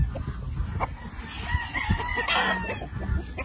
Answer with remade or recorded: recorded